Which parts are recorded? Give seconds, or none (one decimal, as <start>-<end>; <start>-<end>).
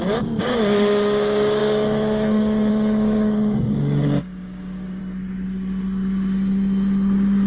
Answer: 5.0-7.5